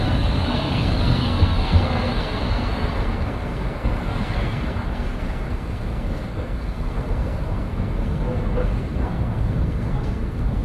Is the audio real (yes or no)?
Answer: no